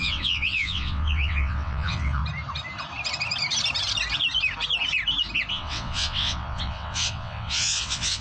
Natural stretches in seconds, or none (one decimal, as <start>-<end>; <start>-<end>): 2.2-5.5